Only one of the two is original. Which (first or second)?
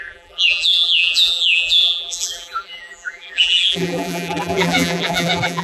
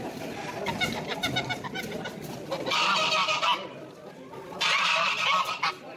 second